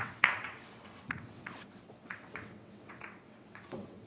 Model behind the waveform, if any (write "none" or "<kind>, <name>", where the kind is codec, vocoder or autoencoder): vocoder, WaveNeXt